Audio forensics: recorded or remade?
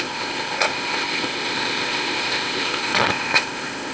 remade